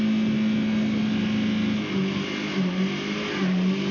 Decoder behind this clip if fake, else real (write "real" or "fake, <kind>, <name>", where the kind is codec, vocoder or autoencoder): real